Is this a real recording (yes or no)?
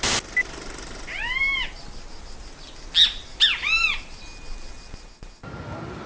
yes